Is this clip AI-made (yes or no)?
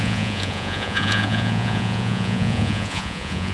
yes